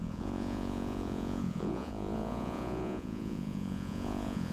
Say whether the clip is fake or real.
fake